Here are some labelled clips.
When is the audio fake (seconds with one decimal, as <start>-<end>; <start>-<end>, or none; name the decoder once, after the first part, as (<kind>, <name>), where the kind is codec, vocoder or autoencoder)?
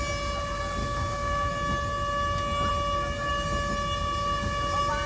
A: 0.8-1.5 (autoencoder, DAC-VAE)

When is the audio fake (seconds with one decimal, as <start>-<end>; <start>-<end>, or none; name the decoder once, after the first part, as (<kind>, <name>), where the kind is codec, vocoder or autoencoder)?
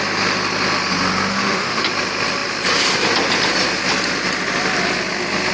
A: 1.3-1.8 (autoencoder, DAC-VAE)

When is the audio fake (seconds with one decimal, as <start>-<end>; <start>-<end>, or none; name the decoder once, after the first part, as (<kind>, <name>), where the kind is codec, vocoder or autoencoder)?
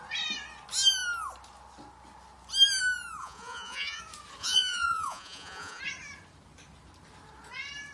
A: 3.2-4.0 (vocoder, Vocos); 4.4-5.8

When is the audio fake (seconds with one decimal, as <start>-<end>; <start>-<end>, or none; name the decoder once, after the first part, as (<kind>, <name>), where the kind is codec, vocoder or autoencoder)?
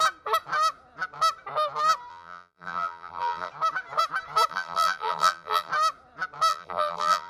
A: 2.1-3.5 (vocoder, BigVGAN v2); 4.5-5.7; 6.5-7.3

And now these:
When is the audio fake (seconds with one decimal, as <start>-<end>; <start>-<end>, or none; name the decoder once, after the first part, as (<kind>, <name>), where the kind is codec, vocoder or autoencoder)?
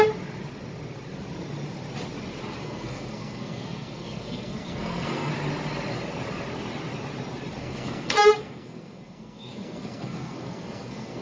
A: 2.6-5.3 (codec, SNAC); 7.6-11.2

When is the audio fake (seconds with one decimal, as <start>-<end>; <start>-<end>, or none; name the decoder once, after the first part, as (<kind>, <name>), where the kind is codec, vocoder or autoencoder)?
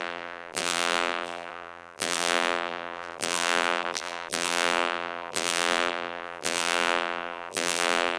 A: 0.0-8.2 (vocoder, BigVGAN v2)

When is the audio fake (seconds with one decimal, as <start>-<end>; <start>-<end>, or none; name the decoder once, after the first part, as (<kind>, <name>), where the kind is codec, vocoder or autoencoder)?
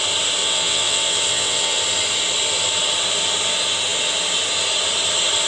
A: 0.4-1.8 (vocoder, WaveNeXt)